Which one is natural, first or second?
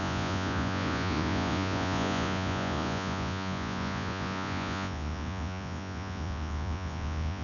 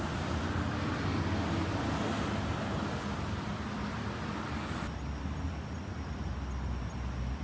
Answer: second